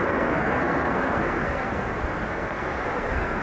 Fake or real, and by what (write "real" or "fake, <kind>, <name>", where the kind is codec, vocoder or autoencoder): fake, codec, SNAC